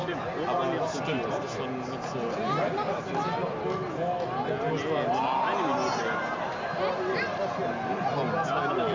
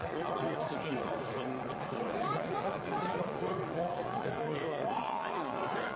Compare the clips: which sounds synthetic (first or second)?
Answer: second